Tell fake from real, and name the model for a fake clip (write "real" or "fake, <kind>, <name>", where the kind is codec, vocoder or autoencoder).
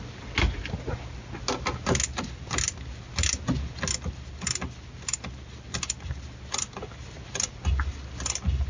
real